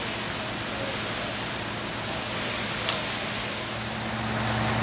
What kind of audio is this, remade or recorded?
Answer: recorded